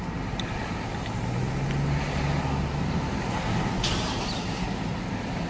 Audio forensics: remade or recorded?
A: recorded